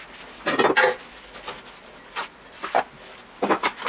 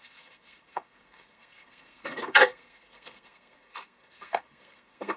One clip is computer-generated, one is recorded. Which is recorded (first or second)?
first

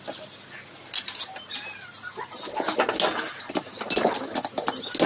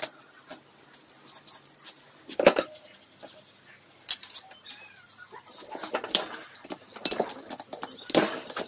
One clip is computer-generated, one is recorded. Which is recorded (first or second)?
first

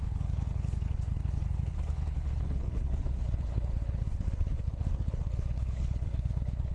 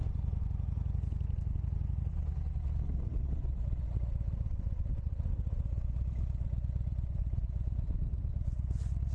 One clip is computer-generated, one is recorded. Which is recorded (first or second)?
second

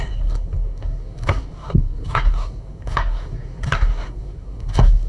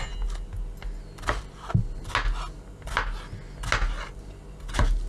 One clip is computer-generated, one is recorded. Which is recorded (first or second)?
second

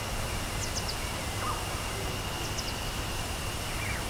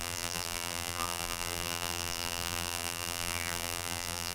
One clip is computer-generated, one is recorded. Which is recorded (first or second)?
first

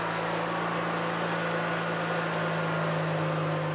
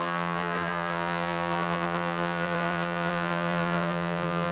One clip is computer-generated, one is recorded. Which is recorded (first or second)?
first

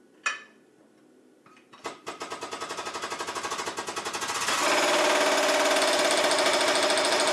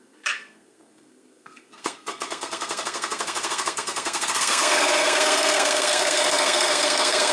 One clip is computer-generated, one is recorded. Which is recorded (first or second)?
first